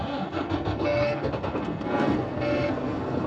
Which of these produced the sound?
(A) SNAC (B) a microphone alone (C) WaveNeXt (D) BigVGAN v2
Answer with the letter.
A